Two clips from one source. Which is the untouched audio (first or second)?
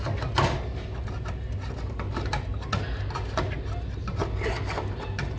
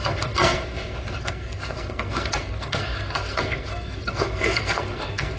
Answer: first